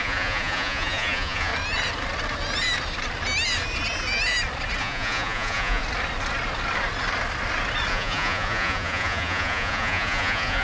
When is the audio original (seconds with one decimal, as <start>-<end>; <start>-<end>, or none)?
1.5-4.8; 5.8-7.9